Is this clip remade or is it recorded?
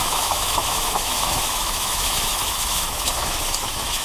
remade